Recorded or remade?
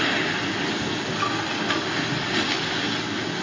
recorded